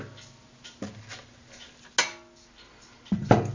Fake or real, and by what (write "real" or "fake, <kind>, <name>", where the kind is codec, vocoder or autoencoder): real